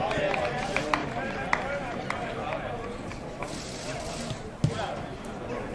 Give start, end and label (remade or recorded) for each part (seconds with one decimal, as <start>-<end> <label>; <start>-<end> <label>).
0.0-5.7 recorded